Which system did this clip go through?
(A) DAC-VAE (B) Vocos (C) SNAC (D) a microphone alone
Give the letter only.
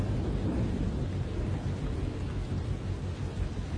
D